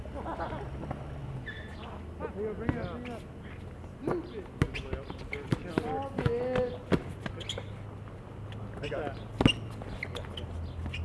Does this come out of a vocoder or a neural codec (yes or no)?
no